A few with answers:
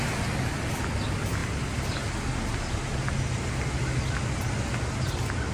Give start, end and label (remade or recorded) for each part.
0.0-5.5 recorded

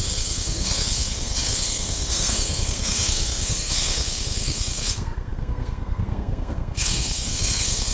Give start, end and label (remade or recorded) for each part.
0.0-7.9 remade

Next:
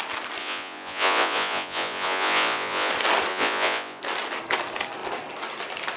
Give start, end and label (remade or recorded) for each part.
0.0-0.4 recorded; 0.4-2.9 remade; 2.9-3.3 recorded; 3.3-4.0 remade; 4.0-6.0 recorded

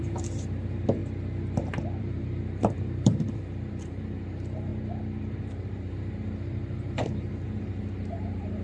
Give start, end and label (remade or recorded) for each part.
0.0-1.0 remade; 1.0-2.0 recorded; 2.0-4.7 remade; 4.7-5.2 recorded; 5.2-8.6 remade

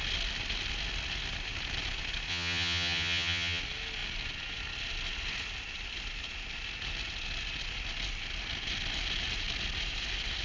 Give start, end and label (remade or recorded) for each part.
0.0-2.3 recorded; 2.3-3.6 remade; 3.6-10.4 recorded